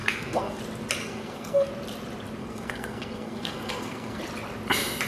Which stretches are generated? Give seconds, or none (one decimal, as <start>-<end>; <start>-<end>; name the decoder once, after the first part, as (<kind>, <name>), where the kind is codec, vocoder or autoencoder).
0.0-0.6 (codec, SNAC); 1.0-1.7; 2.4-4.2

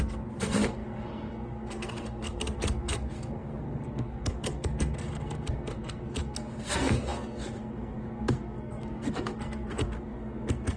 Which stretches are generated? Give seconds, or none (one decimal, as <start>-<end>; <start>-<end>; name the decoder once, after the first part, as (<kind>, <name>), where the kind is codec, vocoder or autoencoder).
0.0-10.8 (codec, SNAC)

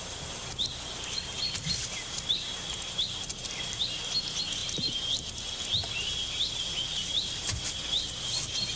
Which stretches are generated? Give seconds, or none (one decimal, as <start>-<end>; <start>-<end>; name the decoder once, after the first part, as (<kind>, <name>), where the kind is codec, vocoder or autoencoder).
none

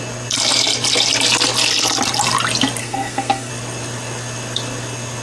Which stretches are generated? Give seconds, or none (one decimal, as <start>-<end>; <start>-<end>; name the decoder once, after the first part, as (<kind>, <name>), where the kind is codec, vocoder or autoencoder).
2.8-3.5 (codec, SNAC)

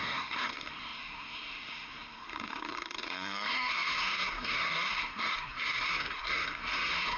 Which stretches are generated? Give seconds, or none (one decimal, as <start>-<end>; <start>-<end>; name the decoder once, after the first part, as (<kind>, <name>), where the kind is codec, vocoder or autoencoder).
0.0-7.2 (codec, SNAC)

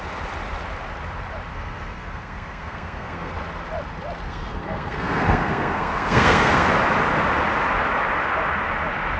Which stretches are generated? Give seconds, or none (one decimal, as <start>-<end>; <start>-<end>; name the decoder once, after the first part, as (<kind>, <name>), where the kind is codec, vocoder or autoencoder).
1.5-3.3 (codec, SNAC); 4.3-6.7